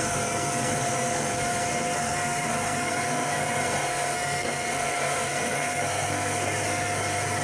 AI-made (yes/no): yes